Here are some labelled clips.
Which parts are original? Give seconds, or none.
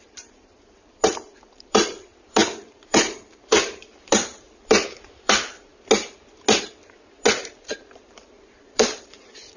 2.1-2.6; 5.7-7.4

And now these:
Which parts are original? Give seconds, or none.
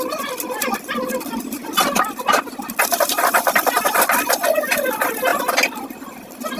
0.0-5.3; 5.8-6.6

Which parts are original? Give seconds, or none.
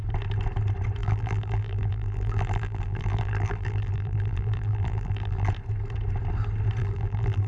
0.0-1.0; 5.5-6.8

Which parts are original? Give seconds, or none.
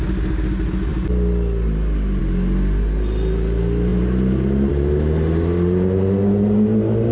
0.0-7.1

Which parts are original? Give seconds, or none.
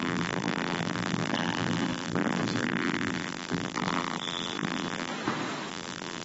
5.1-5.7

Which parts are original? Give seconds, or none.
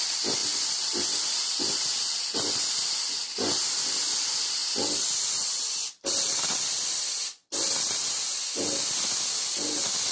0.0-0.4; 1.6-4.6; 7.9-10.1